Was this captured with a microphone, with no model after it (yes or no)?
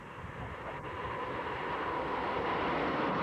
yes